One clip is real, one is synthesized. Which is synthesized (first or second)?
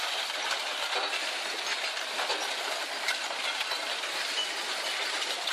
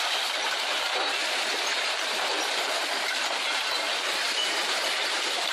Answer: second